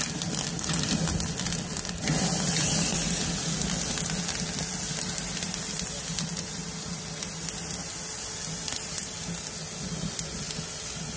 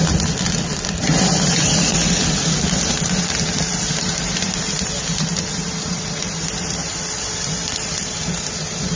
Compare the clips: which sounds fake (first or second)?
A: second